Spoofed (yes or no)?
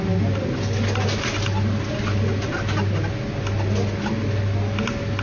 no